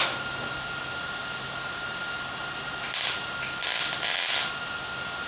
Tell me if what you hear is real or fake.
real